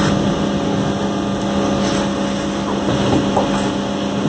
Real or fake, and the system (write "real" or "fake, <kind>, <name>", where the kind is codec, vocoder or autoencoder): real